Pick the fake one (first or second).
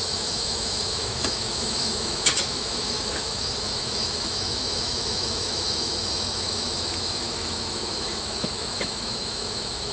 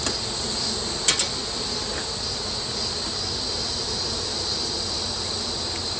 first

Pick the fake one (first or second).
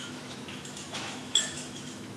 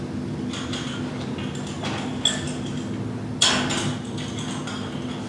first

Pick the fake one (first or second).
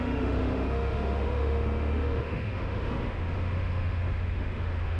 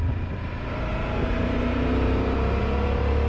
first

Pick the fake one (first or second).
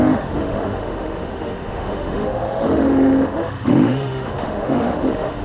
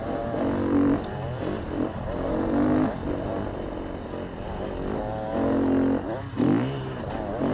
first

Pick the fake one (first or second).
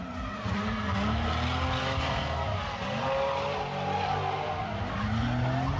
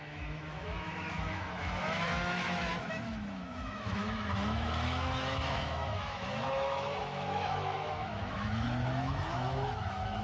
second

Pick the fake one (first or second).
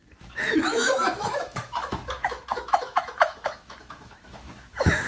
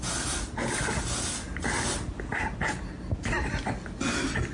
first